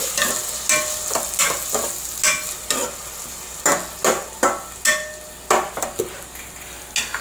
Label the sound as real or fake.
real